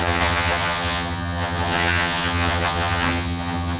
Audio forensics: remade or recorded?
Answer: remade